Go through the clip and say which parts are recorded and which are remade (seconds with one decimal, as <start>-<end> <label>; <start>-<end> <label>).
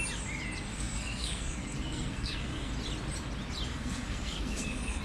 0.0-0.7 recorded; 0.7-2.7 remade; 2.7-3.7 recorded; 3.7-5.0 remade